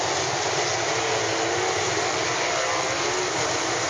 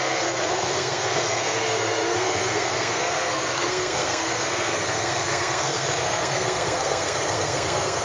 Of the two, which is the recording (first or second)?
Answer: first